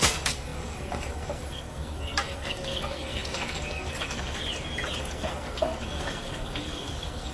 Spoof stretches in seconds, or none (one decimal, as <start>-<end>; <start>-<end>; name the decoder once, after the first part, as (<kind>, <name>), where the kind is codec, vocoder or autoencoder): 0.0-4.4 (codec, SNAC); 5.0-7.3